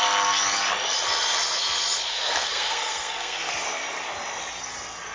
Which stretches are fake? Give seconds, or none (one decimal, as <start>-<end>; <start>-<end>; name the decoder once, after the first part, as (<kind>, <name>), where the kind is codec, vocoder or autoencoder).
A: 2.1-3.5 (codec, SNAC)